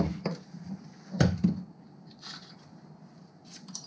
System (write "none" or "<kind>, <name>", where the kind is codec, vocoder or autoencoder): none